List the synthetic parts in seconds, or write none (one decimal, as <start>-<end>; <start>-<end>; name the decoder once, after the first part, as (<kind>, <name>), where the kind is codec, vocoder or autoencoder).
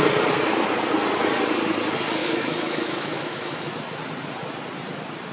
2.2-3.7 (autoencoder, DAC-VAE)